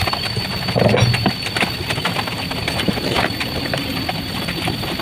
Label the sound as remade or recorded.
recorded